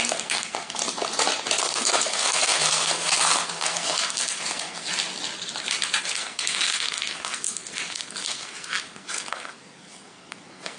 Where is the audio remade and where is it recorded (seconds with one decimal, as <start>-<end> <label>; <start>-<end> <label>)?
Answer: 0.0-0.8 remade; 0.8-1.6 recorded; 1.6-4.9 remade; 4.9-6.0 recorded; 6.0-10.8 remade